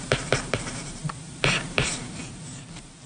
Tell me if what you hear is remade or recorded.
remade